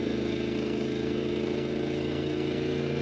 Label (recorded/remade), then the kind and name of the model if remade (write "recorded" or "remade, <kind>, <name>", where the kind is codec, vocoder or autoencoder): remade, codec, SNAC